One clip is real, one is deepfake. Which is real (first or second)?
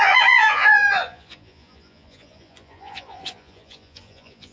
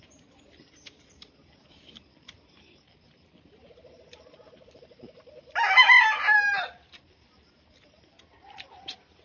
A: second